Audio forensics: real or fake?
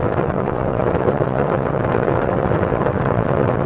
fake